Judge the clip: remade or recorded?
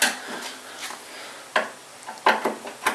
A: recorded